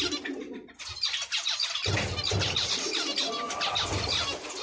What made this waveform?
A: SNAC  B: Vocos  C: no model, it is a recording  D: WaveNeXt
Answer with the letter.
C